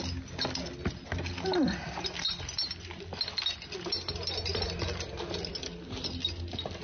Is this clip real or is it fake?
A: real